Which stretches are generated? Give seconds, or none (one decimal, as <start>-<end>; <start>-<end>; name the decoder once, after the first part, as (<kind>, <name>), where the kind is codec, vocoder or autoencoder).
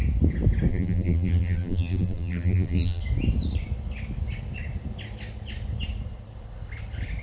0.7-3.0 (vocoder, BigVGAN v2)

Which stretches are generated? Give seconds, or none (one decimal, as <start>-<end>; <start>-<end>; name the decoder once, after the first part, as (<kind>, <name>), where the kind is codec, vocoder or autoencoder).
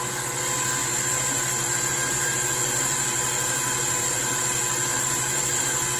0.8-4.4 (vocoder, BigVGAN v2); 4.9-5.6